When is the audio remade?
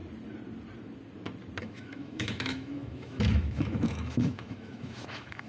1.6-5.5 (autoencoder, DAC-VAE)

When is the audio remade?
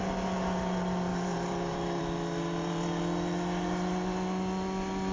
1.1-2.0 (vocoder, BigVGAN v2)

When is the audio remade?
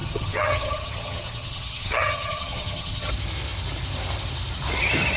0.0-3.1 (vocoder, HiFi-GAN)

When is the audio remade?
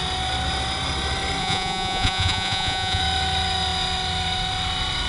1.4-3.0 (vocoder, Vocos)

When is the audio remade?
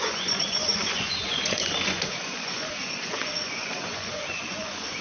0.0-5.0 (vocoder, Vocos)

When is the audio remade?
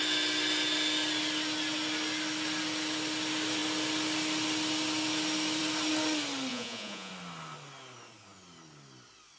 6.5-7.1 (vocoder, Vocos)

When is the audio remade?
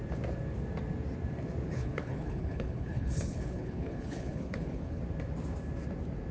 1.7-5.0 (codec, HILCodec)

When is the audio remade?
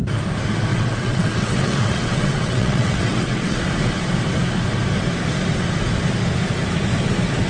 0.7-3.6 (vocoder, WaveNeXt)